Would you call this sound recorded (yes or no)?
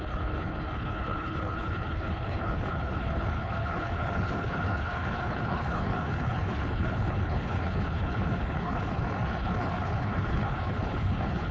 no